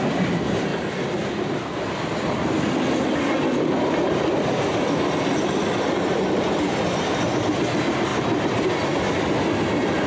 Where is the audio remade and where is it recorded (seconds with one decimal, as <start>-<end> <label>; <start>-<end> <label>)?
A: 0.0-10.1 recorded